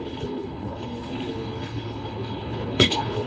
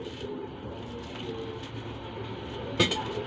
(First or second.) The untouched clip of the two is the second